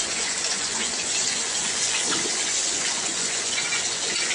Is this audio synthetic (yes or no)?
yes